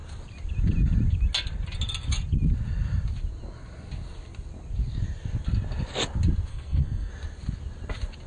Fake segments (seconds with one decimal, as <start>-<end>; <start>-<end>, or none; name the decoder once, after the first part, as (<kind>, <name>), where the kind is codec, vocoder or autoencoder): 6.5-7.1 (codec, SNAC)

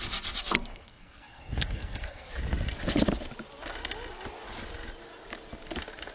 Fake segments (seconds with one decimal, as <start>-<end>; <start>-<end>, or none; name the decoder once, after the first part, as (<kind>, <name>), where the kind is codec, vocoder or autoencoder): 0.7-2.3 (codec, SNAC)